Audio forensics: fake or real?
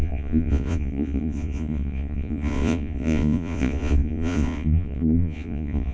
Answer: fake